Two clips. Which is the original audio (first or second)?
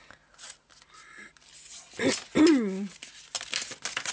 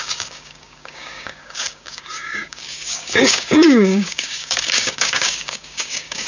first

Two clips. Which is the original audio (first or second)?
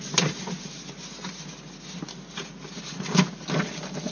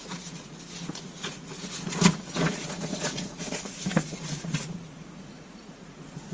first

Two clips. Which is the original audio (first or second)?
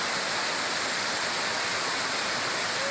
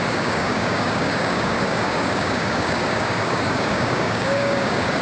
first